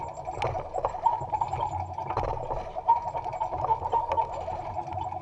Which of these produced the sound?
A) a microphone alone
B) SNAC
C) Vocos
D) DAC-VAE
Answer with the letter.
A